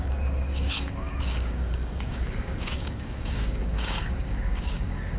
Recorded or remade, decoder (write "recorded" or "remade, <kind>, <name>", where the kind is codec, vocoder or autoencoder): remade, codec, DAC